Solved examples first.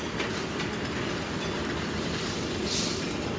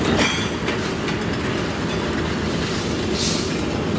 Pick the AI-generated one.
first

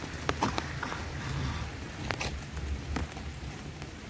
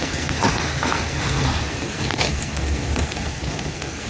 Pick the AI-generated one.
second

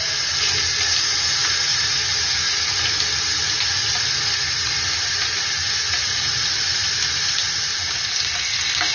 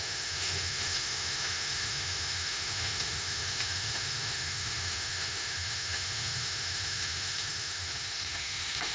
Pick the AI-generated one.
second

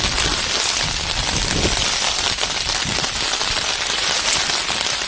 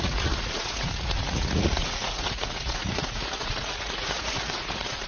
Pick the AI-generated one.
second